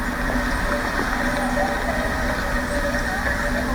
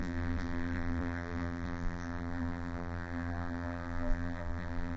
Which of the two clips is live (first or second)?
first